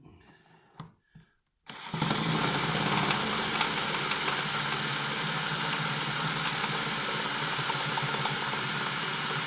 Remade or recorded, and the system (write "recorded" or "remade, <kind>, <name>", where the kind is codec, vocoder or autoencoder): recorded